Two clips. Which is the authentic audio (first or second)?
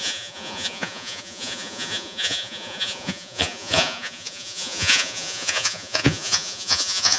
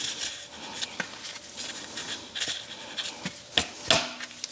second